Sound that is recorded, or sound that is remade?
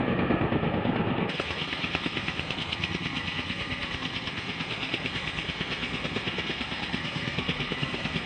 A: remade